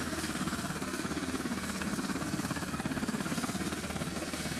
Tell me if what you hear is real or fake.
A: fake